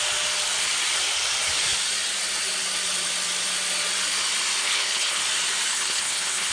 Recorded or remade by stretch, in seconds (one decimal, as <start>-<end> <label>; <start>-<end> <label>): 0.0-4.6 recorded; 4.6-5.2 remade; 5.2-5.7 recorded; 5.7-6.5 remade